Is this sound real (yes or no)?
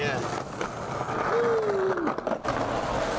yes